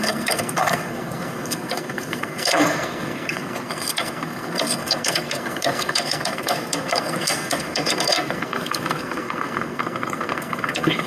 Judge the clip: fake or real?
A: fake